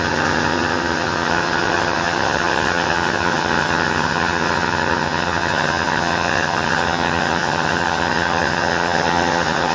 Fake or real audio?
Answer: fake